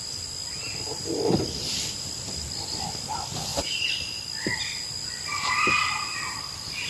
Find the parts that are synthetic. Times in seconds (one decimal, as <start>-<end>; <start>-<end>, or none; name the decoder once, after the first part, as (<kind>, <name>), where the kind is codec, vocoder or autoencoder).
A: none